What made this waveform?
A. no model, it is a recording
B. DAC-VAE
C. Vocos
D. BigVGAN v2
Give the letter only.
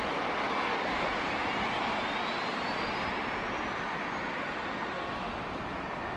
A